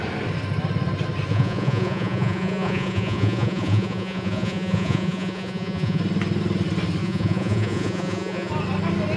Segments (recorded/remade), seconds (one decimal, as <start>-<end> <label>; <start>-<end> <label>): 0.0-1.3 recorded; 1.3-6.0 remade; 6.0-7.0 recorded; 7.0-8.5 remade; 8.5-9.2 recorded